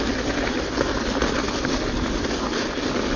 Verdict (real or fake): real